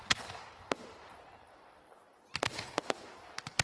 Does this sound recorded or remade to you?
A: recorded